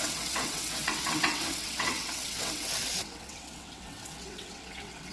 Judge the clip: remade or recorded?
remade